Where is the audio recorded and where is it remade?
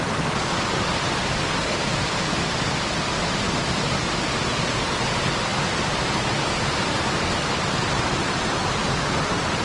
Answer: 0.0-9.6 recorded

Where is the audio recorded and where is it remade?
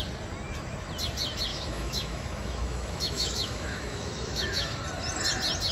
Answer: 0.0-1.5 recorded; 1.5-4.8 remade; 4.8-5.7 recorded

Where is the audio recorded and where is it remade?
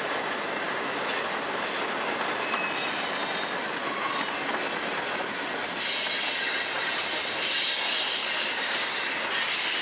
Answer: 0.0-8.2 recorded; 8.2-8.9 remade; 8.9-9.8 recorded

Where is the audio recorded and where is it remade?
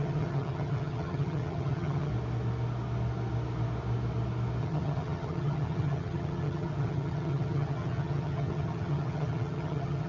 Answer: 0.0-2.1 remade; 2.1-4.6 recorded; 4.6-10.1 remade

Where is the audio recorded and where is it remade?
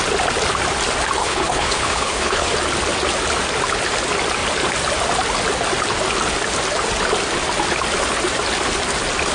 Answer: 0.0-1.2 recorded; 1.2-2.5 remade; 2.5-9.3 recorded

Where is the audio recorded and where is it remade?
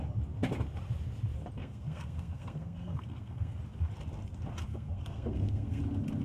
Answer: 0.0-1.6 recorded; 1.6-3.6 remade; 3.6-4.7 recorded; 4.7-5.8 remade; 5.8-6.2 recorded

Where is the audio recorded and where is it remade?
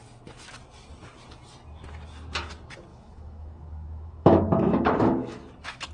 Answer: 0.0-2.9 recorded; 2.9-5.5 remade; 5.5-5.9 recorded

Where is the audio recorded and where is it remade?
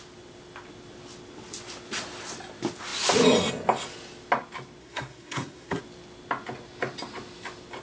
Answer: 0.0-4.8 recorded; 4.8-5.8 remade; 5.8-7.8 recorded